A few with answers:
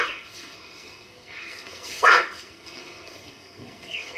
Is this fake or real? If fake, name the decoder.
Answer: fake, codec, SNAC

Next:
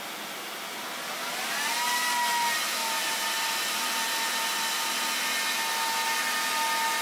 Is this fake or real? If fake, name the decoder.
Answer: real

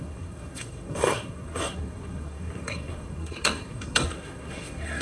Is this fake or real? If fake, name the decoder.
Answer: fake, codec, SNAC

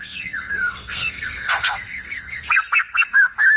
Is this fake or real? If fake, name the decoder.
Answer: fake, codec, SNAC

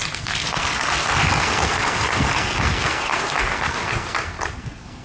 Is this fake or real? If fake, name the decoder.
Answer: fake, codec, SNAC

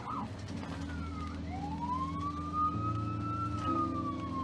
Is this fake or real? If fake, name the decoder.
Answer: real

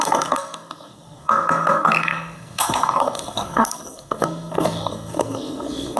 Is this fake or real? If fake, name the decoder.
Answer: fake, codec, SNAC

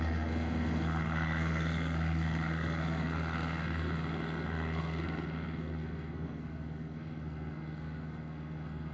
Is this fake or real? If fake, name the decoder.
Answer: fake, codec, SNAC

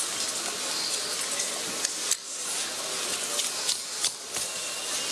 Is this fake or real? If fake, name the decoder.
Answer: real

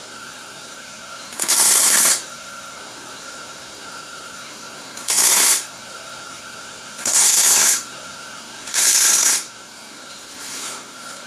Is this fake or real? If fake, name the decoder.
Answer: fake, codec, SNAC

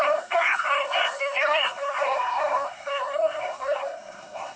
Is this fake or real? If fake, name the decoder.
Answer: fake, codec, SNAC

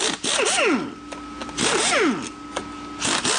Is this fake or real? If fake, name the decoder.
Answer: real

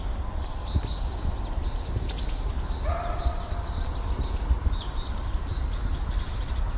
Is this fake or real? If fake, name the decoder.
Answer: real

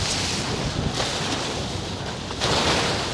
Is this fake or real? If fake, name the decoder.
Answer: real